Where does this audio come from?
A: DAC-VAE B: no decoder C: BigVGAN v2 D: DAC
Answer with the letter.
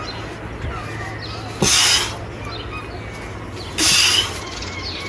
B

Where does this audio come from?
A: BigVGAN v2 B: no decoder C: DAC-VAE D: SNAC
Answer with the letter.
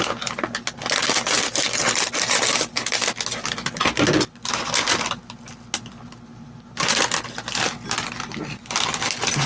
B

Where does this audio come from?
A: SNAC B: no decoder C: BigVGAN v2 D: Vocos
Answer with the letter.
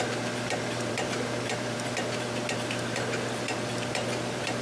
C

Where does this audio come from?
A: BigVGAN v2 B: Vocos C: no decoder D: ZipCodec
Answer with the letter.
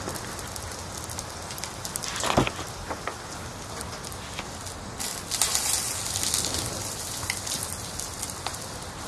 C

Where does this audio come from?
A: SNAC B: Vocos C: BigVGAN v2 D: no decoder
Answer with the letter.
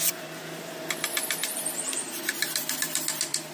C